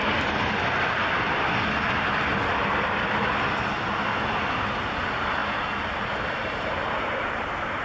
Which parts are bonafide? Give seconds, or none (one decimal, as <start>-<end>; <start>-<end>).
0.0-4.4; 5.4-6.0